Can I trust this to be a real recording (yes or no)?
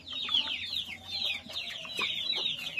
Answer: yes